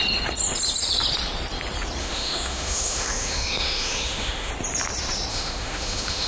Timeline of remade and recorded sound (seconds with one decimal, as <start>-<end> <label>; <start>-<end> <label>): 0.0-2.0 recorded; 2.0-4.5 remade; 4.5-5.3 recorded; 5.3-6.3 remade